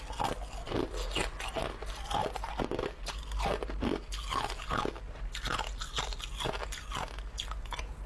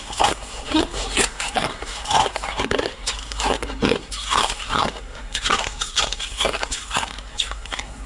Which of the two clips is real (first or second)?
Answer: first